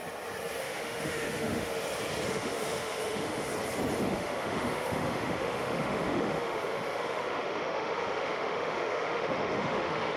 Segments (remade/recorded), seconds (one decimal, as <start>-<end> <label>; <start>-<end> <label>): 0.0-0.6 recorded; 0.6-1.7 remade; 1.7-2.3 recorded; 2.3-3.5 remade; 3.5-4.0 recorded; 4.0-10.2 remade